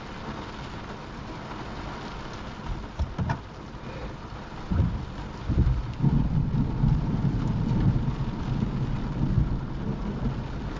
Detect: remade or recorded recorded